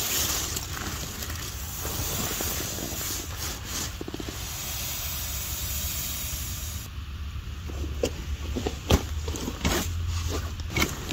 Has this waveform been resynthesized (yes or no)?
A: no